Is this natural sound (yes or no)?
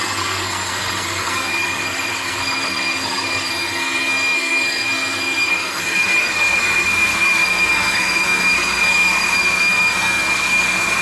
no